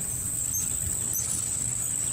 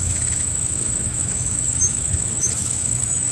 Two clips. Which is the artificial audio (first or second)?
second